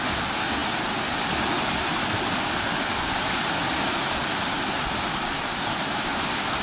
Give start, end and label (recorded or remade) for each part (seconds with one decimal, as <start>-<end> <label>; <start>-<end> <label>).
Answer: 0.0-6.6 recorded